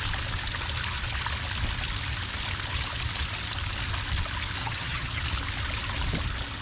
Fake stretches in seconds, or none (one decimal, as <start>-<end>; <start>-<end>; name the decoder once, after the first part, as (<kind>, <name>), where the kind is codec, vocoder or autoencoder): 4.6-5.2 (vocoder, HiFi-GAN)